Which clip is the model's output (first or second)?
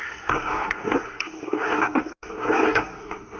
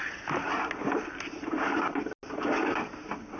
first